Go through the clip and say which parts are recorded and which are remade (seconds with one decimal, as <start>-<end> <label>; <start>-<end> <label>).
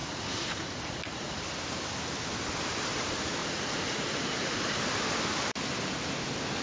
0.0-1.4 remade; 1.4-3.4 recorded; 3.4-4.8 remade; 4.8-6.6 recorded